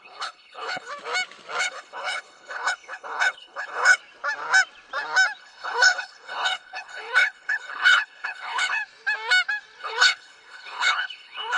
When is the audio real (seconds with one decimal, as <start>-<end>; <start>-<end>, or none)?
0.9-1.6; 4.0-5.4; 8.8-9.8